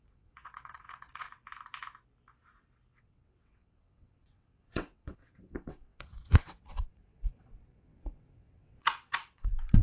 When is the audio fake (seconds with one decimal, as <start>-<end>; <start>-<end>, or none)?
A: 0.0-1.3; 3.0-9.8